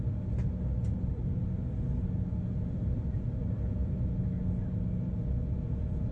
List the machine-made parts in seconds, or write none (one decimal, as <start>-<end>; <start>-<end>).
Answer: none